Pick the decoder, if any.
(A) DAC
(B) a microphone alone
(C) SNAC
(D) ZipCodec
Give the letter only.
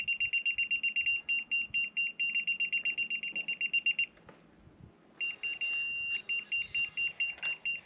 B